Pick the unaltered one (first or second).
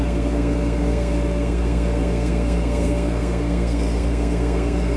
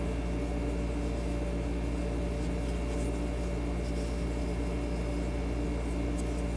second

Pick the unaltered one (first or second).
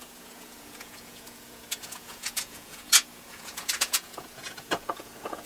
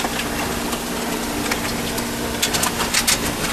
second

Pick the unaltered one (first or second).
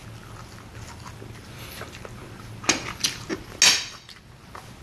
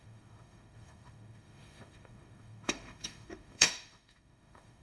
first